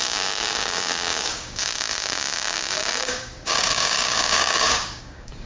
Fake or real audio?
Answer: fake